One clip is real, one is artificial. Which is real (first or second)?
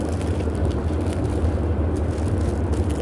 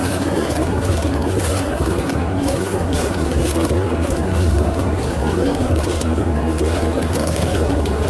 first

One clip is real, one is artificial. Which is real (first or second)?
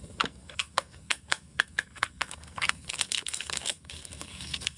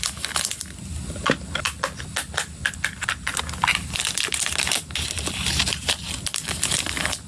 second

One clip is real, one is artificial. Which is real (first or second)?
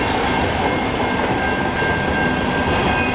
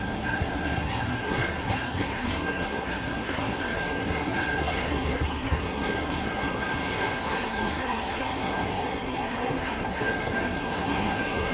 first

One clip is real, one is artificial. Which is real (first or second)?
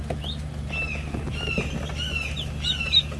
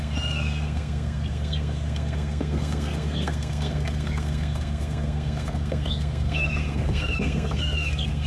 first